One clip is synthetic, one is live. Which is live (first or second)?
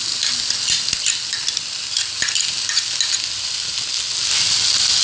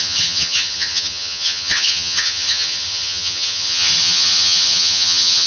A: first